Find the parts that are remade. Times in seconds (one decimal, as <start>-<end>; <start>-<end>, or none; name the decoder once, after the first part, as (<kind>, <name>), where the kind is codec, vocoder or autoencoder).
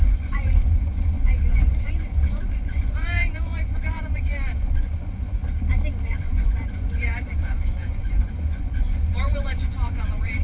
0.0-5.4 (vocoder, Vocos); 6.1-10.4